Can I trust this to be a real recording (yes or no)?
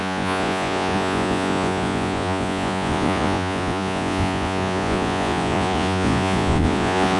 no